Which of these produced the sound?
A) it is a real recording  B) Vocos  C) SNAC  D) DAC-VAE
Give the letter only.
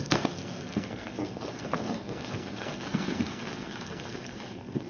C